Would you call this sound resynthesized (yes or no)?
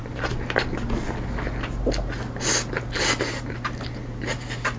no